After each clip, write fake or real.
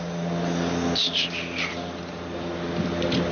real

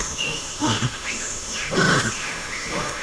fake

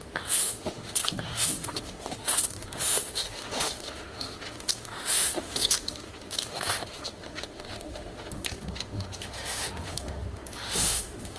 fake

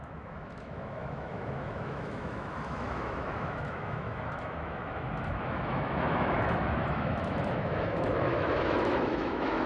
fake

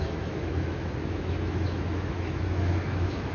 fake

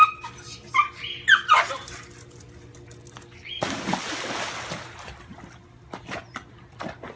real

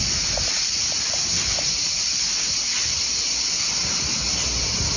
real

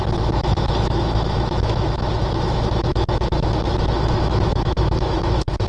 fake